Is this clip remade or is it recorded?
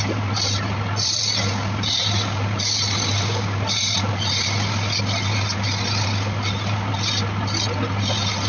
recorded